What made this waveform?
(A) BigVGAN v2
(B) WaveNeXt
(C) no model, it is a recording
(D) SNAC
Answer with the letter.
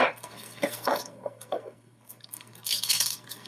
D